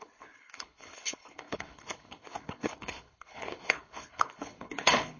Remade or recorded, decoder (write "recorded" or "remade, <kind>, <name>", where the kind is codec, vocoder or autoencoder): remade, codec, HILCodec